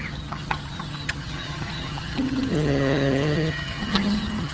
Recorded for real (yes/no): no